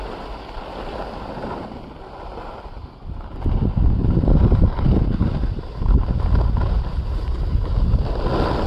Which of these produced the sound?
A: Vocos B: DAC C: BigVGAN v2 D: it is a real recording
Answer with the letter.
D